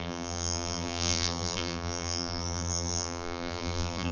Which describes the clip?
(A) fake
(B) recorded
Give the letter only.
A